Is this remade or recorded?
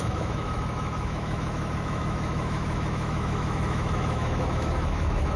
remade